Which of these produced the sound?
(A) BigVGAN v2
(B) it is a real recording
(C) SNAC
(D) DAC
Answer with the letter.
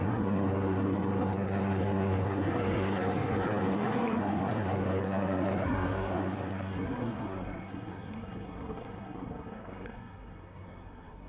C